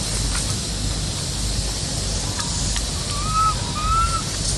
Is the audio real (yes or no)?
yes